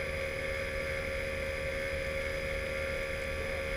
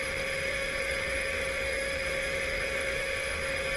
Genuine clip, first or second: first